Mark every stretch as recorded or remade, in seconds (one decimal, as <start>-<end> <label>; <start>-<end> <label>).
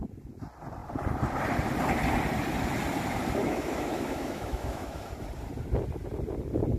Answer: 0.0-3.4 recorded; 3.4-5.1 remade; 5.1-6.8 recorded